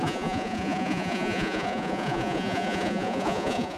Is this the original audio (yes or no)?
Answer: no